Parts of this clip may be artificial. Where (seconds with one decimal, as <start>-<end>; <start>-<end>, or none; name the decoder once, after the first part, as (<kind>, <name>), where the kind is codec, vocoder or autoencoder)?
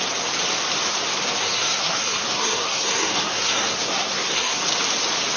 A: 1.4-4.6 (codec, SNAC)